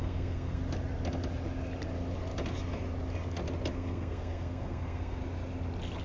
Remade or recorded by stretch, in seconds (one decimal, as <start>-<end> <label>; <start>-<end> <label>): 0.0-0.6 remade; 0.6-3.7 recorded; 3.7-5.2 remade; 5.2-6.0 recorded